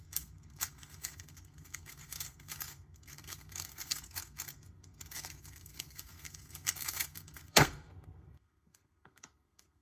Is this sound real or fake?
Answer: fake